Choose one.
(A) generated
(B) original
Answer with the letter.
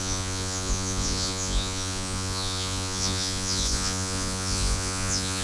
A